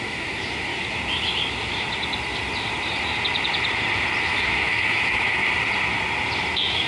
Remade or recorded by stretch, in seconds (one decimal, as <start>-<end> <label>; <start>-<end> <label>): 0.0-0.7 remade; 0.7-4.2 recorded; 4.2-5.4 remade; 5.4-6.5 recorded; 6.5-6.9 remade